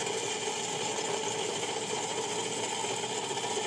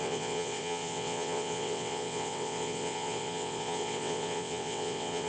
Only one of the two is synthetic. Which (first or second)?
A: second